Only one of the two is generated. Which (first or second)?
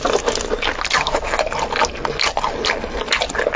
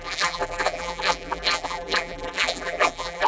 second